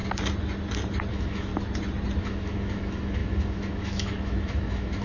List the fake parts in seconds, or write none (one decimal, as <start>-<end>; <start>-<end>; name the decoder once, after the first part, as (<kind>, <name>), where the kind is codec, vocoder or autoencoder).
1.1-1.5 (autoencoder, DAC-VAE); 2.2-5.0